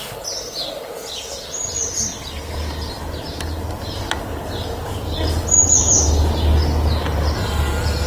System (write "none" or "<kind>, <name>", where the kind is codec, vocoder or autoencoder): none